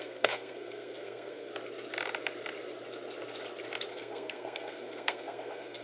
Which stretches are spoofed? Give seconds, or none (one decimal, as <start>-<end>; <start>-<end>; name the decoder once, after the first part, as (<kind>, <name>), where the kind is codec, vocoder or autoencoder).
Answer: 0.0-1.5 (codec, SNAC); 3.9-5.8